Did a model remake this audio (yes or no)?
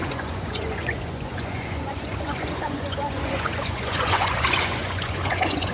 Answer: yes